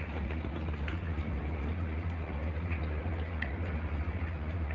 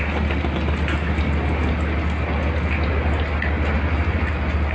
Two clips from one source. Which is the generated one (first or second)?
first